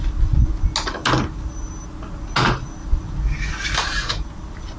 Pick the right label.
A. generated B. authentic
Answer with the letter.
B